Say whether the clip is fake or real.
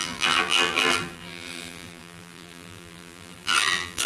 fake